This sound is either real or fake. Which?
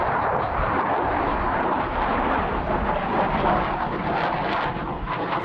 real